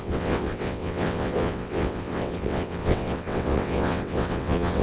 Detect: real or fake fake